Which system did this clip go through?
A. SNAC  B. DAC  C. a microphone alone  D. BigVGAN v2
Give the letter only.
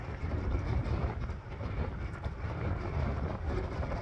C